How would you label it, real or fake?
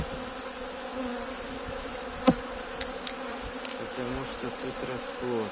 real